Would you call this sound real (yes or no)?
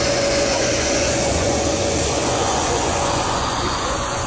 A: no